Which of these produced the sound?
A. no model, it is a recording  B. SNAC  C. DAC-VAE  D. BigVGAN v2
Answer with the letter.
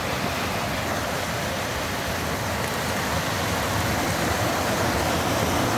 A